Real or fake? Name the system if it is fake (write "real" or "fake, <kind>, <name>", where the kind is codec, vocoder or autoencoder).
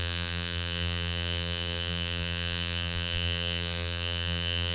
fake, vocoder, BigVGAN v2